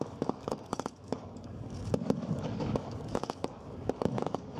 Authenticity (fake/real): fake